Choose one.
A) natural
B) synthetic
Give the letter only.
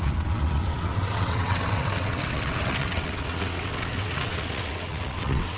B